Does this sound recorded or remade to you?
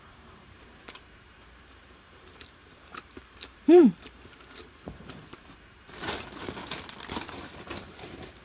remade